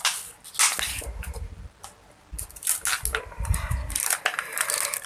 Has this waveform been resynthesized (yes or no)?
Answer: no